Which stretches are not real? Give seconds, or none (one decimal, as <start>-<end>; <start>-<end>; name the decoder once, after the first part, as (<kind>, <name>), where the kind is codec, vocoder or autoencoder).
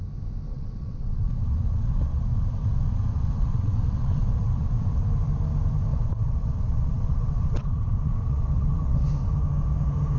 0.5-5.0 (vocoder, WaveNeXt); 5.9-9.1